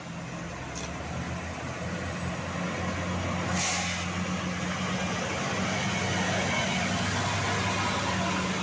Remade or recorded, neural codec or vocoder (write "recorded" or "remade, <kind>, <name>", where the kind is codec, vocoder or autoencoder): recorded